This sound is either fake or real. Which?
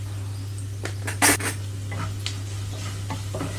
real